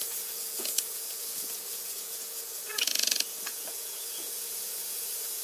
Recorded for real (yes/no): no